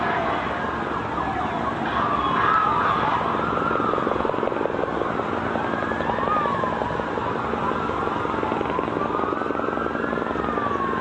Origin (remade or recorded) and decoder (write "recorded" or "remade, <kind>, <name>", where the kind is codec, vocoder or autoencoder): recorded